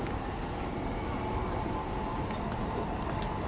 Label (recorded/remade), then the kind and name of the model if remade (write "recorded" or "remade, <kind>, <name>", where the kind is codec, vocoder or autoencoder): recorded